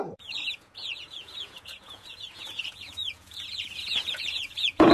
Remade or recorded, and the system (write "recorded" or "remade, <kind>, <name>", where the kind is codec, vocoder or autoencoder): remade, vocoder, Vocos